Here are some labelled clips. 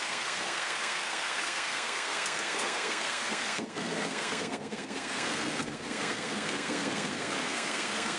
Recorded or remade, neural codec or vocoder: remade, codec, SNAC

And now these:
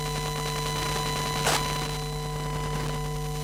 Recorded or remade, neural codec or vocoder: recorded